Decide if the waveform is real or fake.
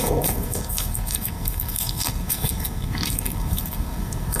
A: fake